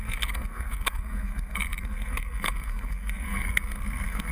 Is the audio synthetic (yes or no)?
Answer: yes